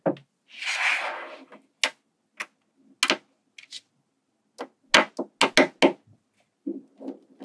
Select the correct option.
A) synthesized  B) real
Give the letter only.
B